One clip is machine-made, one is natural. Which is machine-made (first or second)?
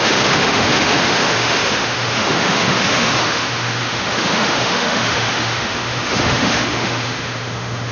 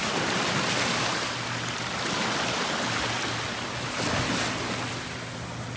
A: first